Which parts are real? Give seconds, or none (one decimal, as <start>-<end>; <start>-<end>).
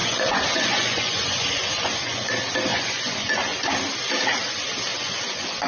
2.3-2.7; 3.7-4.9